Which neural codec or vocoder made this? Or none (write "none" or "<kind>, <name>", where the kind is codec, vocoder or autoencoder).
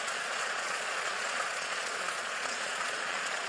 vocoder, Vocos